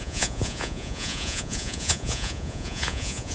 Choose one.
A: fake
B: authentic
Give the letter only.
A